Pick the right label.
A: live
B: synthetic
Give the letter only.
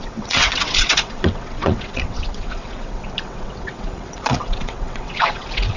B